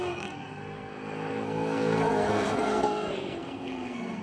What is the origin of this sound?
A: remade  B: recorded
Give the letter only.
A